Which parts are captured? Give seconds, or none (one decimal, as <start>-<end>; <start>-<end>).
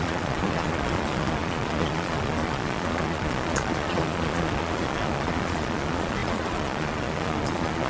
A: none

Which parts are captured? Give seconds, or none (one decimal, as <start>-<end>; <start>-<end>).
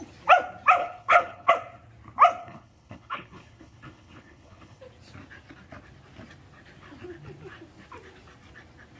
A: 0.0-0.8; 1.5-2.4; 4.8-9.0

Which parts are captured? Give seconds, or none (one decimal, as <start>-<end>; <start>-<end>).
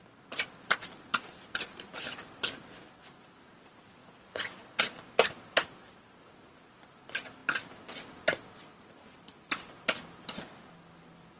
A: 0.0-4.0; 4.8-11.4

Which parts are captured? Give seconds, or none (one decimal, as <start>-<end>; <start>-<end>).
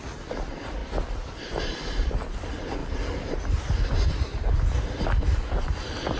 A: 0.0-6.2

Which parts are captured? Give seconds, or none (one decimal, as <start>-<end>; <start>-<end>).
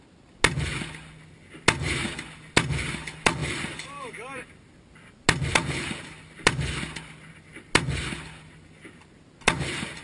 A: 0.0-3.4; 4.8-10.0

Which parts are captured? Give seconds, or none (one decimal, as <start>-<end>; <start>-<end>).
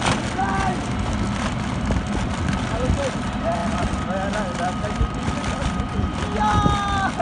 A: 0.0-3.6; 6.2-7.2